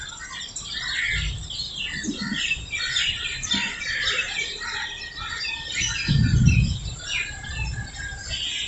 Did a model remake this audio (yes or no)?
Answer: no